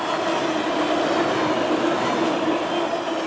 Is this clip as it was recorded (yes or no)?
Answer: yes